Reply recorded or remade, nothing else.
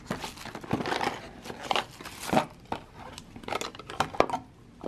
recorded